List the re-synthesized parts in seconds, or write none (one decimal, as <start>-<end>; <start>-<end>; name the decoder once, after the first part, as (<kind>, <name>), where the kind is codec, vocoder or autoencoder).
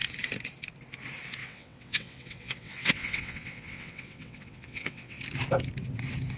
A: 1.4-5.2 (vocoder, WaveNeXt)